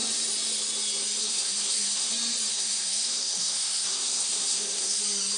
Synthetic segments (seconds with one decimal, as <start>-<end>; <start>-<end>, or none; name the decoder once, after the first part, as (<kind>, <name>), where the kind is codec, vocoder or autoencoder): 1.2-2.1 (codec, SNAC); 2.5-5.0